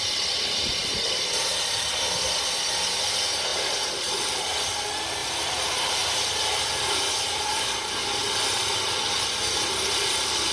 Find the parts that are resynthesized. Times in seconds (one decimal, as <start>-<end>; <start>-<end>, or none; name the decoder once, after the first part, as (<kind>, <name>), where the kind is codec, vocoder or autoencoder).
3.5-4.4 (vocoder, BigVGAN v2); 5.2-6.4